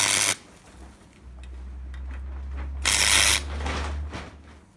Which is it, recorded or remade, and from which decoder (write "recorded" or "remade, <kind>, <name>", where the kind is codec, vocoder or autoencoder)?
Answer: recorded